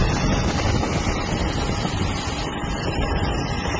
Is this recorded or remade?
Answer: recorded